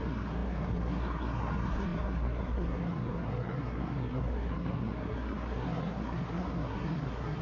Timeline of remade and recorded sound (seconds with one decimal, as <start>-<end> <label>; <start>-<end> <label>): 0.0-7.4 remade

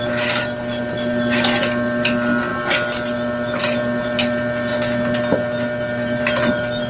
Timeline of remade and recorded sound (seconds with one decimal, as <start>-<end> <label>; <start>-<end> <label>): 0.0-6.9 recorded

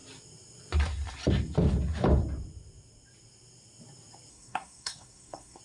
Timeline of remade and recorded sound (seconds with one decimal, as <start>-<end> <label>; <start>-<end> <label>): 0.0-4.3 recorded; 4.3-5.6 remade

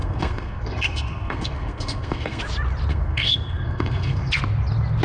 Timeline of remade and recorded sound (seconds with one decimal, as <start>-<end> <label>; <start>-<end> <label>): 0.0-2.4 remade; 2.4-2.9 recorded; 2.9-4.3 remade; 4.3-5.0 recorded

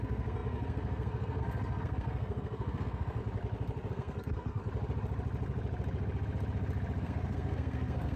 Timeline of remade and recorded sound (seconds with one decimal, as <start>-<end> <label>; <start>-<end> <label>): 0.0-3.2 remade; 3.2-3.9 recorded; 3.9-4.6 remade; 4.6-7.0 recorded; 7.0-8.2 remade

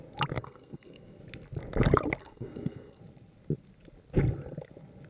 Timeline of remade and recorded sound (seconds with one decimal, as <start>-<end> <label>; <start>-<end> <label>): 0.0-0.4 recorded; 0.4-1.2 remade; 1.2-2.2 recorded; 2.2-3.0 remade; 3.0-5.1 recorded

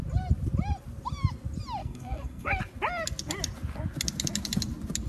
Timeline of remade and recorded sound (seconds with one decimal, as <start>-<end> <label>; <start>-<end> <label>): 0.0-1.8 recorded; 1.8-2.6 remade; 2.6-5.1 recorded

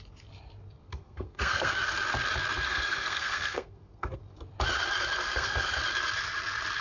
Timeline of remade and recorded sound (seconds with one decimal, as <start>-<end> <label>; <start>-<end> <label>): 0.0-0.8 recorded; 0.8-1.7 remade; 1.7-2.7 recorded; 2.7-4.2 remade; 4.2-5.3 recorded; 5.3-5.8 remade; 5.8-6.8 recorded